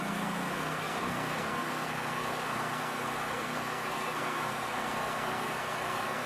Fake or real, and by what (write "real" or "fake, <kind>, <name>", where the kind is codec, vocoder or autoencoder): fake, codec, SNAC